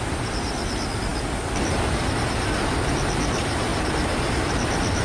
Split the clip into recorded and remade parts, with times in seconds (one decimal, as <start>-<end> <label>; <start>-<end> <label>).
0.0-5.0 recorded